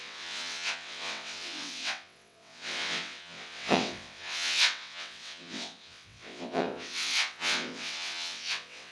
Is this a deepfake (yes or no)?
yes